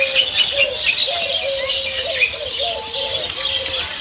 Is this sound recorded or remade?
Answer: recorded